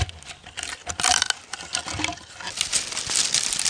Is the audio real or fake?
real